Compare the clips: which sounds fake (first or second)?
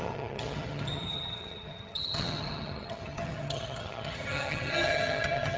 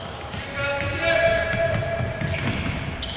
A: first